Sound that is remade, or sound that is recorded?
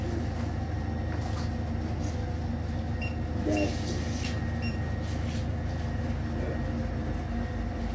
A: recorded